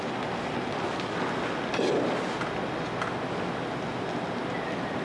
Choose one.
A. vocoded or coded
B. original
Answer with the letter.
B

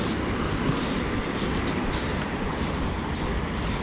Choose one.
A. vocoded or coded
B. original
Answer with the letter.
B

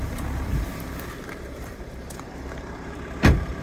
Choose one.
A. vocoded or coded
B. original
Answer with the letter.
A